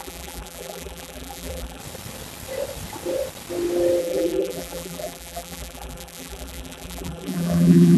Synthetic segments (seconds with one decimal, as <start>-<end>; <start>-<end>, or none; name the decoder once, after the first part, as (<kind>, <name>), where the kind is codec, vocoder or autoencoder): 0.0-1.8 (vocoder, BigVGAN v2); 4.0-8.0